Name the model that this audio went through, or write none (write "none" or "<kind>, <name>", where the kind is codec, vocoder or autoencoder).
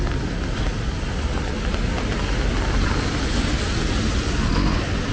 none